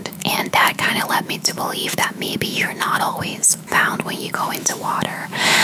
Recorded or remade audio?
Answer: remade